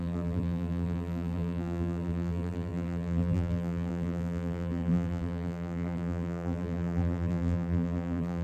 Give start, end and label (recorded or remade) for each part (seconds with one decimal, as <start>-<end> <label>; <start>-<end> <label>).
0.0-8.4 remade